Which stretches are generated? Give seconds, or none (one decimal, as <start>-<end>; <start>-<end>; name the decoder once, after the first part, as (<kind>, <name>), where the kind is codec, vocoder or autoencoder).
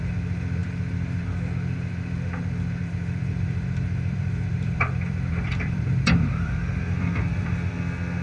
2.8-7.5 (vocoder, BigVGAN v2)